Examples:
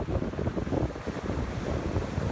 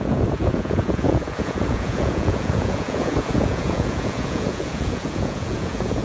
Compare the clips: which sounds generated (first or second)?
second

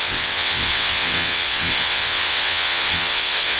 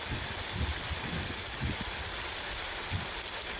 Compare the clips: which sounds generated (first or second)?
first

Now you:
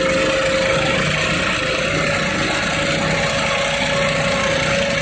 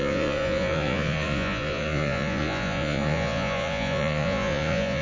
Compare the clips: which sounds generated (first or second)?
second